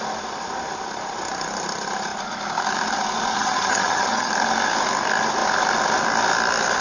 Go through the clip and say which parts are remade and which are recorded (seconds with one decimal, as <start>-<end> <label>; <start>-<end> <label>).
0.0-3.3 recorded; 3.3-4.3 remade; 4.3-6.8 recorded